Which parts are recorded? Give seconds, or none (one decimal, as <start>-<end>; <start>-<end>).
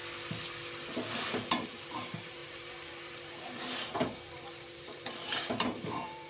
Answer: 0.0-1.5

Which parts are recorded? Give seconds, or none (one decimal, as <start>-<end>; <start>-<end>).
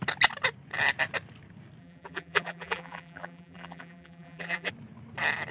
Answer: 0.0-1.8; 4.7-5.5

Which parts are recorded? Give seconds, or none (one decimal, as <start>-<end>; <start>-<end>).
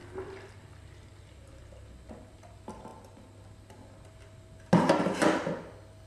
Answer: 0.0-6.1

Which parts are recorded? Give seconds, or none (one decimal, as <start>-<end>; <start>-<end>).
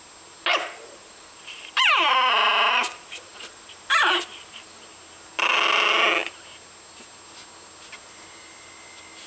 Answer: 0.0-0.5; 4.8-9.3